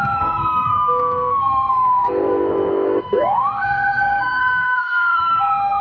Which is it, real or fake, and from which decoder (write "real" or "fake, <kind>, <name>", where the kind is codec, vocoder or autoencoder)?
fake, codec, SNAC